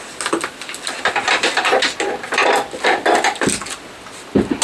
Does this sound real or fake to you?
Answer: real